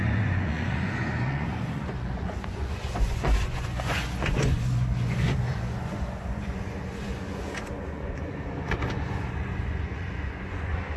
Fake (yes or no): yes